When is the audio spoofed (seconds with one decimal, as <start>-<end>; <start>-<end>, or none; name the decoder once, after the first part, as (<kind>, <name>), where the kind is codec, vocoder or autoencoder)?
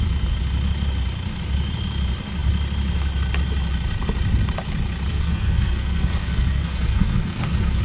5.1-7.8 (codec, SNAC)